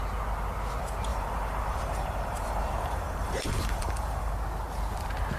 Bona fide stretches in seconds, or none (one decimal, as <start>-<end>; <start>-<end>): 0.0-1.1; 4.3-5.4